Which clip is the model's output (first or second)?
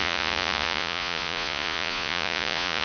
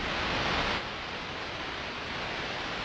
first